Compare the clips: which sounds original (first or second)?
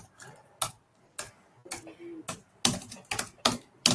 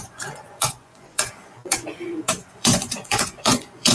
first